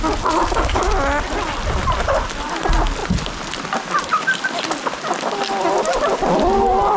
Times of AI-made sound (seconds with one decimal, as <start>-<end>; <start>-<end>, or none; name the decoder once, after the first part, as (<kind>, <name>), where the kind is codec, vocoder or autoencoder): 0.4-0.9 (codec, DAC)